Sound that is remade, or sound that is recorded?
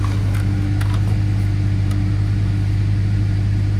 recorded